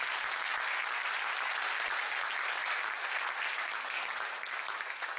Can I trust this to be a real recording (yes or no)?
yes